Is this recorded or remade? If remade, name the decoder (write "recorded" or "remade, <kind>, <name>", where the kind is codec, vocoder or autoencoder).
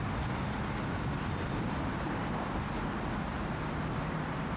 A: recorded